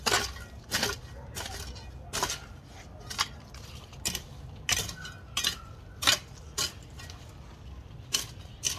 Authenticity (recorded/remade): recorded